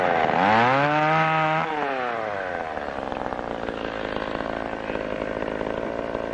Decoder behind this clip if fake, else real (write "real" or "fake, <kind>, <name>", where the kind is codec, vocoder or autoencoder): real